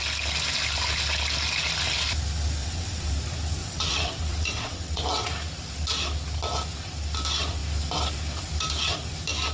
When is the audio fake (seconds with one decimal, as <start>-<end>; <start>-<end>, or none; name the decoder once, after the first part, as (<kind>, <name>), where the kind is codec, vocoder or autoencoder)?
2.6-3.1 (vocoder, WaveNeXt); 3.6-5.0